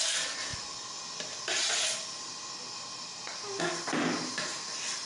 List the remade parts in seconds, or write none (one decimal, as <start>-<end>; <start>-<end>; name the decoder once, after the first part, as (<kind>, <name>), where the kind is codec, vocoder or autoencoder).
none